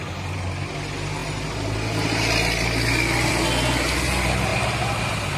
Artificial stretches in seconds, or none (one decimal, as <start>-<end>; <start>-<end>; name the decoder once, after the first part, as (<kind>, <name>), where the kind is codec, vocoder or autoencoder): 4.5-5.4 (vocoder, BigVGAN v2)